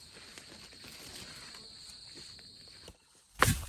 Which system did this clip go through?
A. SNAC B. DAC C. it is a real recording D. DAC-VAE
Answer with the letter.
C